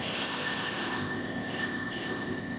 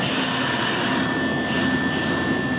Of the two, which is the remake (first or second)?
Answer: first